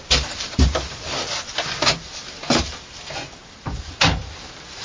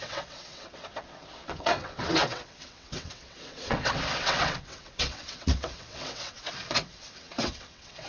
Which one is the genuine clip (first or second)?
first